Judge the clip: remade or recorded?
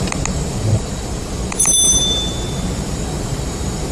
remade